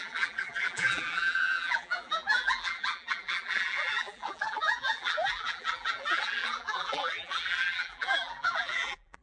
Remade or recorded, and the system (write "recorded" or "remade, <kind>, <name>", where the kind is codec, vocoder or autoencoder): remade, vocoder, BigVGAN v2